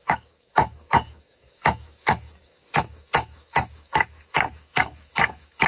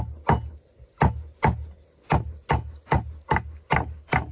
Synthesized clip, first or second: first